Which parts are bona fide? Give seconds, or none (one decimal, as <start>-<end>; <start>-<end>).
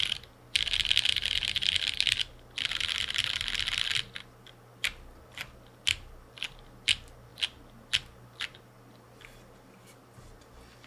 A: 0.0-10.9